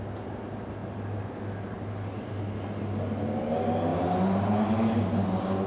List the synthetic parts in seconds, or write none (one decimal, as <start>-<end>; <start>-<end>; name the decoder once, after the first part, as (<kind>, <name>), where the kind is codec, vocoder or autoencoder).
none